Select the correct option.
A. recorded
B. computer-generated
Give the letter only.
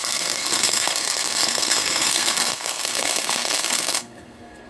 B